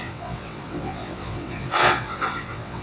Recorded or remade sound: remade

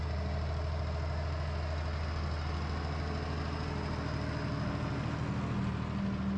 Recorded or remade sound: recorded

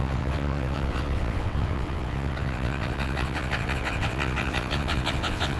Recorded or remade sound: remade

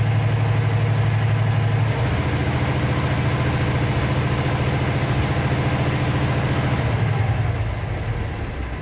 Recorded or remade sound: recorded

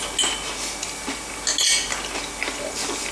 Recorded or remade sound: recorded